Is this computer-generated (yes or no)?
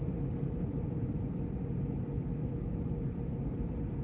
no